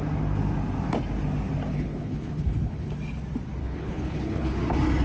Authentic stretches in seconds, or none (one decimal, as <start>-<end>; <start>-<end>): 0.0-1.7; 2.9-3.6; 4.6-5.0